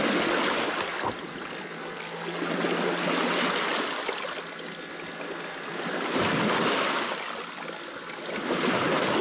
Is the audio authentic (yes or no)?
yes